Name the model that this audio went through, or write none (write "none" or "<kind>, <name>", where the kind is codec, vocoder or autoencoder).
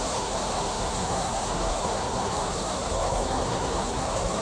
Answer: codec, SNAC